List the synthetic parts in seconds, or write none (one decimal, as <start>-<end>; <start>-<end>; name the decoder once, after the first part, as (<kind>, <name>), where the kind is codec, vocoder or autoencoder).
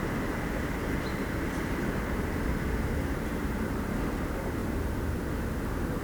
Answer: 1.1-4.0 (vocoder, BigVGAN v2); 4.6-5.3